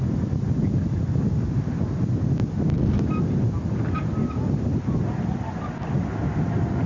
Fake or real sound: real